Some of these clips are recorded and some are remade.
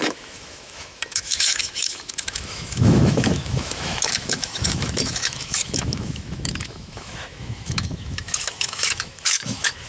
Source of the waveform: remade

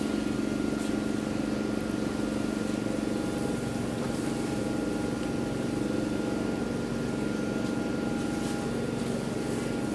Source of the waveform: recorded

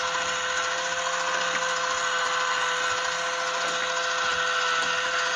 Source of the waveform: recorded